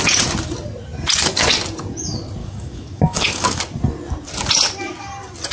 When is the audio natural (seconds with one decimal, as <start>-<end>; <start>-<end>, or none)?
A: 0.0-2.4; 3.6-5.5